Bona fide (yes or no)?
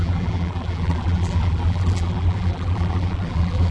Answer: no